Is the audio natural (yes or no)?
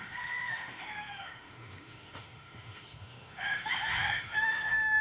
no